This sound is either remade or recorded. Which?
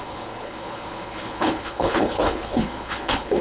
remade